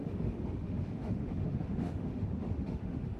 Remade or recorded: remade